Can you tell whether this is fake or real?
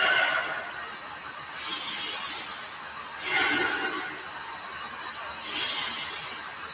real